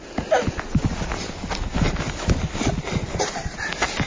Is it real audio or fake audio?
real